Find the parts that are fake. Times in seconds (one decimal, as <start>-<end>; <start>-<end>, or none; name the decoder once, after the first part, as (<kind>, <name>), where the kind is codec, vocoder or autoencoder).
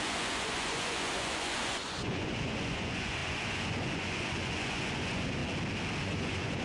0.0-5.4 (vocoder, Vocos); 6.0-6.6